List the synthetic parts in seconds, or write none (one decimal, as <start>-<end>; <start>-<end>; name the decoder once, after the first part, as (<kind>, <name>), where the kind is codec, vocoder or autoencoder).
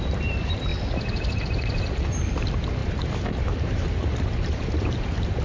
0.0-0.7 (vocoder, BigVGAN v2); 1.4-2.8; 3.4-5.4